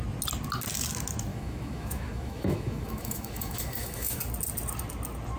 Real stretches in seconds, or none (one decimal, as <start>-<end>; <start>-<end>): 0.0-1.3; 4.2-5.4

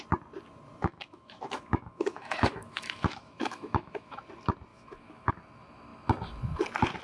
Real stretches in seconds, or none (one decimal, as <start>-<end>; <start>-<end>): 0.0-0.8; 4.2-4.7; 5.3-7.0

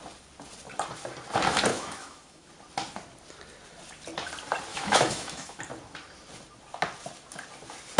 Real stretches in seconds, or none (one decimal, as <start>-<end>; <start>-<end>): 0.0-1.7; 2.5-4.7; 5.6-8.0

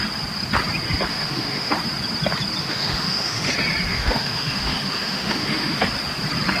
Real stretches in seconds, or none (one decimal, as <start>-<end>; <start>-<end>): 0.0-1.1; 1.7-2.6; 3.5-3.9; 5.8-6.6

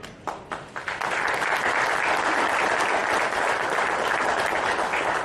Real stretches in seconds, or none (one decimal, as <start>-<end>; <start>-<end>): 0.0-5.2